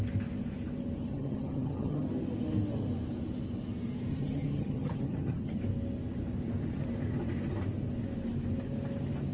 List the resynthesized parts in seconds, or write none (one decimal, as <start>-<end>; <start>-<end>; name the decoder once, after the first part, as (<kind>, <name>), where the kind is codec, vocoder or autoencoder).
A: 1.1-2.1 (vocoder, HiFi-GAN); 4.1-5.6